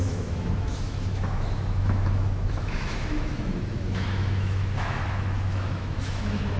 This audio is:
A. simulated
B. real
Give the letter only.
A